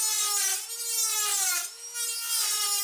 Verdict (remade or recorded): recorded